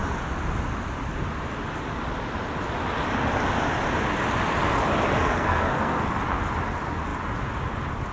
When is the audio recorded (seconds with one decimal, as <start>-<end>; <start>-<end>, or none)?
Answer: 0.0-5.1; 6.1-8.1